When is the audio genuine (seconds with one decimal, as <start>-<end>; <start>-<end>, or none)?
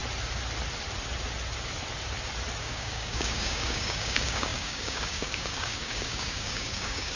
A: 0.0-2.6